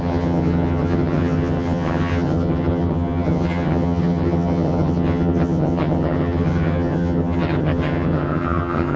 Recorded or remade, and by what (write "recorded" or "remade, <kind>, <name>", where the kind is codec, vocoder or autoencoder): remade, vocoder, HiFi-GAN